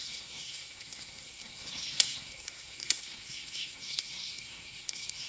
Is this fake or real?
fake